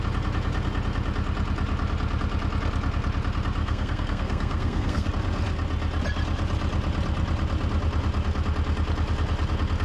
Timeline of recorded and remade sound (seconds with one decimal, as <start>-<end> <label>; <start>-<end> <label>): 0.0-3.6 recorded; 3.6-5.1 remade; 5.1-9.8 recorded